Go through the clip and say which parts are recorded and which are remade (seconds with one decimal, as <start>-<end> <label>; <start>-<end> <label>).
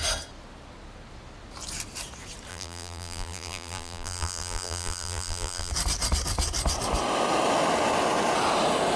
0.0-2.5 recorded; 2.5-5.7 remade; 5.7-9.0 recorded